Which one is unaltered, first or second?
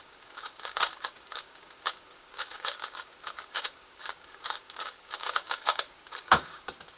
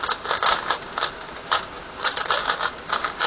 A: second